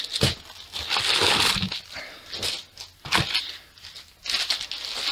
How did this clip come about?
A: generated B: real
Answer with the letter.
B